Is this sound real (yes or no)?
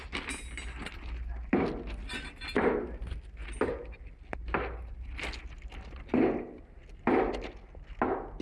yes